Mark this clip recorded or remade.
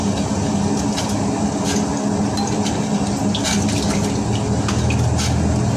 recorded